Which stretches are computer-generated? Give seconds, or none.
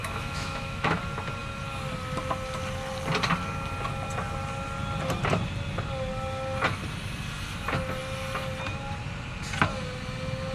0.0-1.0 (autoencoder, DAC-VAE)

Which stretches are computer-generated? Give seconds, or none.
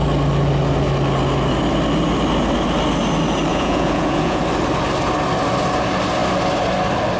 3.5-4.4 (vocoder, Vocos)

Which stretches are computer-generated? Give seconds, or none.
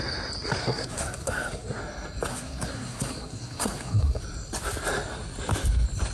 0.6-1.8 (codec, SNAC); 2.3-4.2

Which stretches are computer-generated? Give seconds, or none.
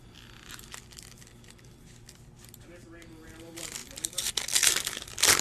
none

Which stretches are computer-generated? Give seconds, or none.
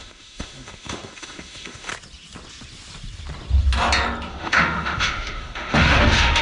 0.0-1.9 (autoencoder, DAC-VAE); 4.3-6.4